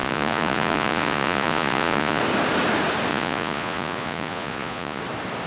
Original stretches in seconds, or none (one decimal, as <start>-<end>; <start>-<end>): 2.2-3.1; 5.0-5.5